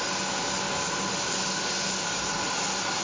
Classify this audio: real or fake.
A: real